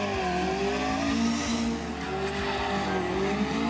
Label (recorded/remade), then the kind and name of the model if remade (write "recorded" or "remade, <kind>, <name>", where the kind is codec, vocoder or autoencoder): recorded